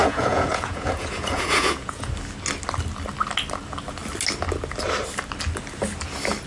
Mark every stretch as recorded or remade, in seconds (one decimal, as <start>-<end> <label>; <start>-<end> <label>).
0.0-2.1 remade; 2.1-6.5 recorded

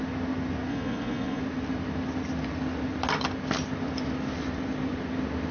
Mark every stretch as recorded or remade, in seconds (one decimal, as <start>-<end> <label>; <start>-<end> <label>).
0.0-0.7 recorded; 0.7-1.4 remade; 1.4-5.5 recorded

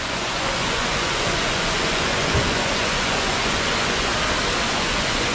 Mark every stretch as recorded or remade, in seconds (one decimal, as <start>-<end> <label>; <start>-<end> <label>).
0.0-4.1 remade; 4.1-4.7 recorded; 4.7-5.3 remade